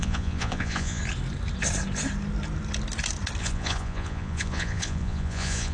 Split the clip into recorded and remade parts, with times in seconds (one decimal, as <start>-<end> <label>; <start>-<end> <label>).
0.0-1.0 remade; 1.0-3.4 recorded; 3.4-5.7 remade